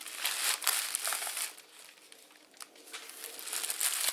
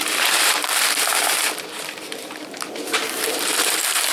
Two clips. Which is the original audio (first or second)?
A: first